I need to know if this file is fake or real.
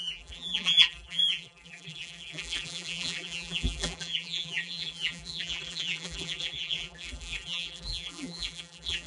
fake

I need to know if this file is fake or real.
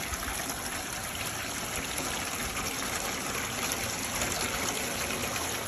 real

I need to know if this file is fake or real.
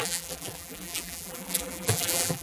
fake